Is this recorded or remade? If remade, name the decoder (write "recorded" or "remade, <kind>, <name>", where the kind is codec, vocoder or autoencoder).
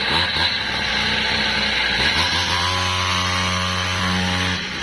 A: recorded